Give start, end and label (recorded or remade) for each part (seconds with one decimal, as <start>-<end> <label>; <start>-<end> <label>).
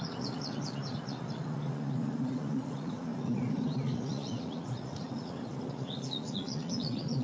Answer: 0.0-7.2 remade